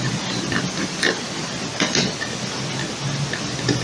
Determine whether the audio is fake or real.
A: real